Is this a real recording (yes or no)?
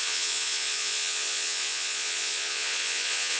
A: no